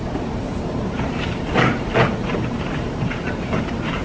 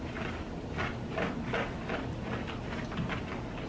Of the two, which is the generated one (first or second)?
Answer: first